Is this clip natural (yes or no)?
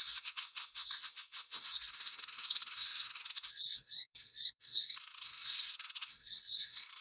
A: no